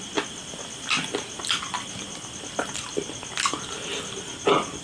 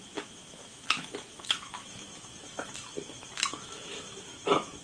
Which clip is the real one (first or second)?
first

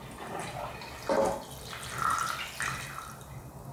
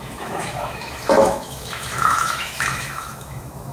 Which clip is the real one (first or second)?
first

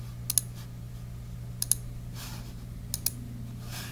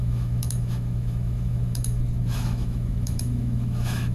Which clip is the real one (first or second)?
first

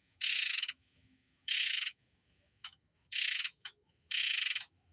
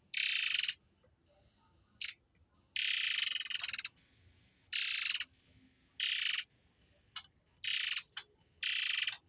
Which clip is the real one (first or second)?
second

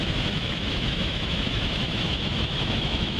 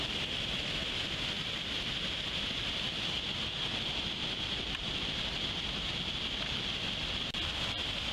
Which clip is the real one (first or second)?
second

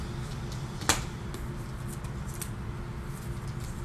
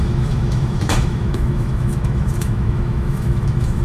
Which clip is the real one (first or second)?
first